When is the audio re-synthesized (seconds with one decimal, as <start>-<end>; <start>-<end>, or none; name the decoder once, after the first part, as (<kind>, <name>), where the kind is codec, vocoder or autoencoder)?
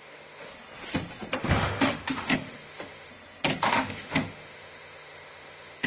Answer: 0.0-0.5 (autoencoder, DAC-VAE); 1.4-3.1; 3.7-5.9